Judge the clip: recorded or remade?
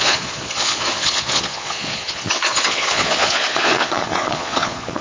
remade